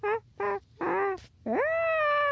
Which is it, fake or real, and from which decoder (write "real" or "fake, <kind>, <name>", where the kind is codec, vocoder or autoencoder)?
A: real